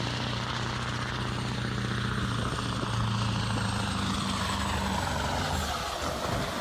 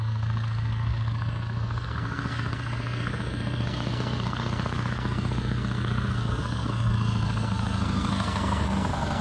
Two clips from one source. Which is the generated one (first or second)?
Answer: second